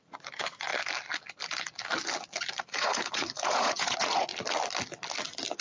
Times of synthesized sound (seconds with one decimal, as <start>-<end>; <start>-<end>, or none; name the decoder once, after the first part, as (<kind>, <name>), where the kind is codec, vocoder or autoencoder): 0.0-0.7 (vocoder, Vocos); 2.6-4.3